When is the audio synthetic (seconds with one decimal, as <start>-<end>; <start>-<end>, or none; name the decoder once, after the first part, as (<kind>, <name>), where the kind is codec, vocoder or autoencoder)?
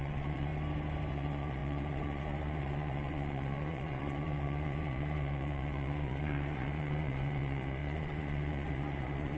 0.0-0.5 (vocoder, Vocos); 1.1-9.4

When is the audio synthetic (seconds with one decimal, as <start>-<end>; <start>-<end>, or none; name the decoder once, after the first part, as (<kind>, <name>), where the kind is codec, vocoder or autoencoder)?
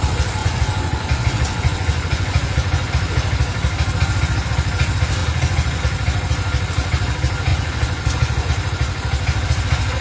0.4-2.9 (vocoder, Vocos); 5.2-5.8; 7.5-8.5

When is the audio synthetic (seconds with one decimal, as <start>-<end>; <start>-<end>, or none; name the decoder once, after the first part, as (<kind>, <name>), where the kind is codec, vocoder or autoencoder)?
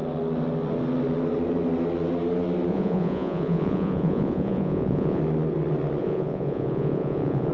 2.7-5.2 (vocoder, Vocos); 6.0-7.5